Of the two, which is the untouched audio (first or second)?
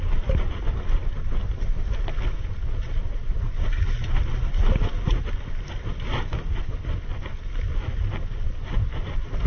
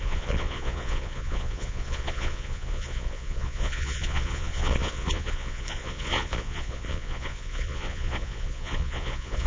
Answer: first